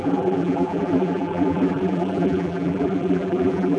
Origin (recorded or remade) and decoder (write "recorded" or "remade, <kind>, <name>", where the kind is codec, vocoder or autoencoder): remade, vocoder, BigVGAN v2